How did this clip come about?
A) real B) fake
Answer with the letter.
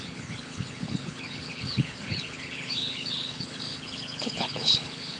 B